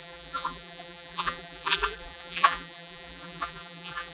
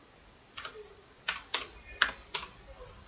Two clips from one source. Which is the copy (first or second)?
first